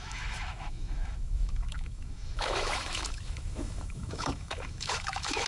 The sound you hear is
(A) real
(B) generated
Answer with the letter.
B